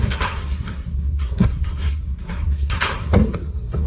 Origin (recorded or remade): remade